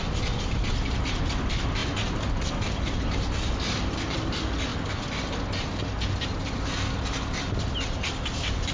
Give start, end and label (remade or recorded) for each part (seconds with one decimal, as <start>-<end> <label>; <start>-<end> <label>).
0.0-4.7 remade; 4.7-6.5 recorded; 6.5-8.7 remade